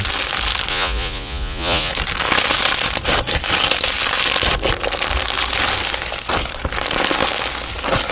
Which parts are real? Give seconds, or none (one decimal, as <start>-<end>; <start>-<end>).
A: 0.0-0.7; 1.9-8.1